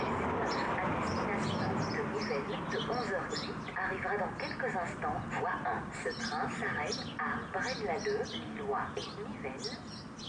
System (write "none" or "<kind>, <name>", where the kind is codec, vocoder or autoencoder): none